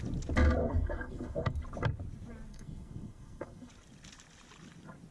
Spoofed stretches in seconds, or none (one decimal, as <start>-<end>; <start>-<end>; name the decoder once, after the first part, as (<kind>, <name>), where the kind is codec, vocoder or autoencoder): 0.6-1.6 (codec, SNAC); 2.5-3.7